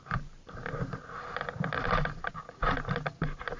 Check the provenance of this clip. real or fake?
real